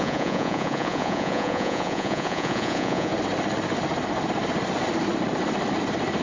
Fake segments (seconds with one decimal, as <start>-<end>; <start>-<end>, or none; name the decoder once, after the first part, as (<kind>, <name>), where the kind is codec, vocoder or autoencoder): 0.0-3.1 (vocoder, Vocos)